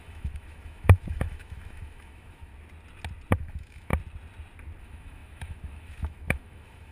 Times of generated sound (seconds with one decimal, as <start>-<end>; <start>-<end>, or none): 0.0-2.5; 3.4-3.9; 4.8-6.9